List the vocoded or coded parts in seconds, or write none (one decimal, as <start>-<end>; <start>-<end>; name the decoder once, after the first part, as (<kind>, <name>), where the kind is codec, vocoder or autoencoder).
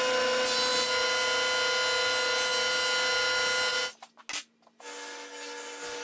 3.7-4.2 (vocoder, BigVGAN v2)